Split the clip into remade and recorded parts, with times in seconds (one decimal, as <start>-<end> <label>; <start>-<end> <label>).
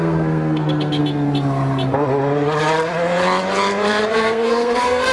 0.0-1.0 remade; 1.0-4.1 recorded; 4.1-5.1 remade